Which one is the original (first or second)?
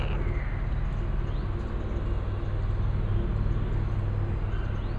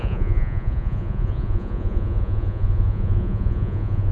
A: first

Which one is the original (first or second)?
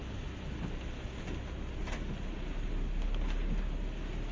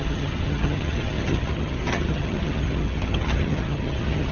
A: first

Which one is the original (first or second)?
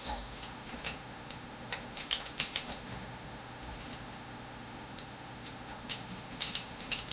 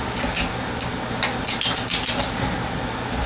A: second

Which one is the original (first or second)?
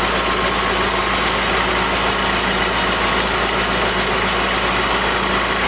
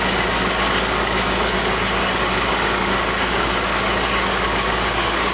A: first